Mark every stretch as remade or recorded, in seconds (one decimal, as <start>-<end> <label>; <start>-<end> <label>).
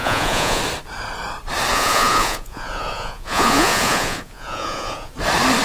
0.0-0.6 remade; 0.6-1.7 recorded; 1.7-5.1 remade; 5.1-5.6 recorded